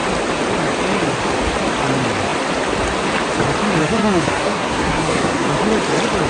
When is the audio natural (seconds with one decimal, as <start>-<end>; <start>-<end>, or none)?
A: 0.0-3.8; 5.5-6.3

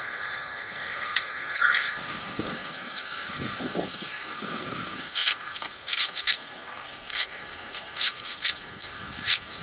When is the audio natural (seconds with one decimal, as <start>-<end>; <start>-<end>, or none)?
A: none